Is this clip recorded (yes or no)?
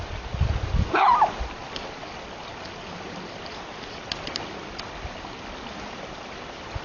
yes